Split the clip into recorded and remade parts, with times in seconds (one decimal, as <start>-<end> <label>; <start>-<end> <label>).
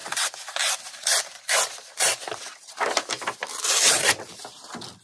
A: 0.0-3.4 remade; 3.4-3.9 recorded; 3.9-5.0 remade